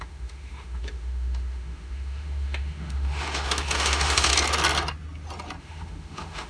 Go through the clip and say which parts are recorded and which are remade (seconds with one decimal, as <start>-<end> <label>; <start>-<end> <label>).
0.0-4.3 remade; 4.3-5.6 recorded; 5.6-6.5 remade